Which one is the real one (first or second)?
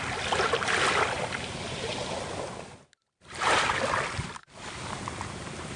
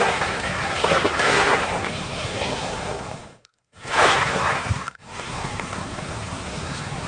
first